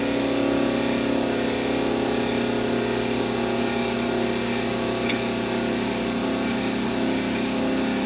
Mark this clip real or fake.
real